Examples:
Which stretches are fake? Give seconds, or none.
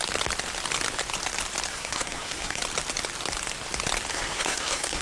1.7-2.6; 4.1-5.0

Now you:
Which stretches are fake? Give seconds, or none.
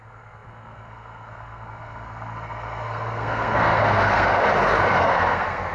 0.0-4.3; 5.1-5.7